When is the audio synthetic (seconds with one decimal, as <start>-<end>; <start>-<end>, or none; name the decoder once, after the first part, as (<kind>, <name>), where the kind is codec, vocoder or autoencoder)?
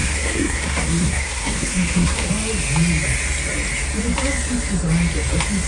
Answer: 0.0-2.3 (codec, SNAC)